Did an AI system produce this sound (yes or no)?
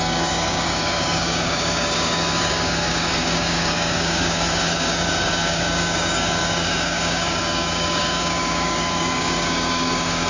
yes